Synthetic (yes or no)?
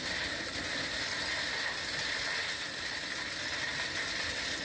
no